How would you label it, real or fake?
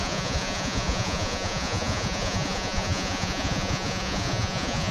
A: fake